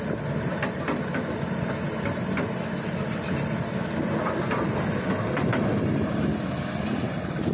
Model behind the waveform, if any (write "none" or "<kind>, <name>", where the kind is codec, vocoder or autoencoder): none